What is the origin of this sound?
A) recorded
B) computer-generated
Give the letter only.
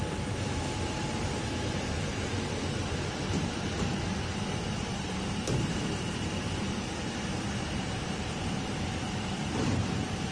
B